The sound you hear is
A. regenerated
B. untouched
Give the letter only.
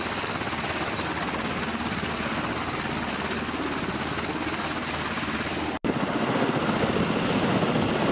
B